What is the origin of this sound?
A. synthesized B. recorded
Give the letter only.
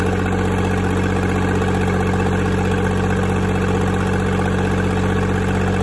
B